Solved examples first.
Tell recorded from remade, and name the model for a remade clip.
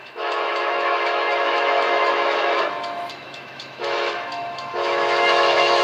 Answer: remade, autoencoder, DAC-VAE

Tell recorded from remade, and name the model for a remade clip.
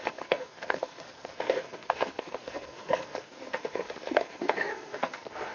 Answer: remade, codec, SNAC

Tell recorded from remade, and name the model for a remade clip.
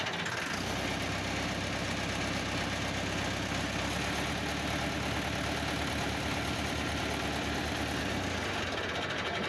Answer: recorded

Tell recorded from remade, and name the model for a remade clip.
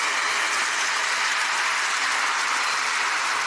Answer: recorded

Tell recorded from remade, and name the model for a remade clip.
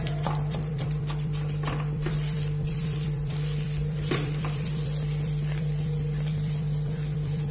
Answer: remade, vocoder, BigVGAN v2